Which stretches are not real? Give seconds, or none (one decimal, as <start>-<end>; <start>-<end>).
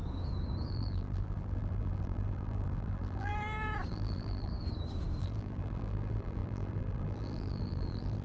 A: 0.7-3.3; 3.9-4.5; 5.2-8.2